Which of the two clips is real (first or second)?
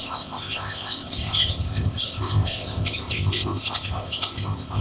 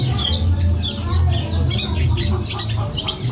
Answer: second